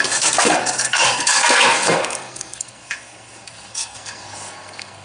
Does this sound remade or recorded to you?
remade